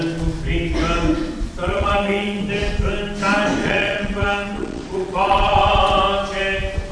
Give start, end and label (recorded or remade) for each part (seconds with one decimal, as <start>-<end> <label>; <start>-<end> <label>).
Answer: 0.0-1.6 recorded; 1.6-2.4 remade; 2.4-3.6 recorded; 3.6-5.8 remade; 5.8-6.9 recorded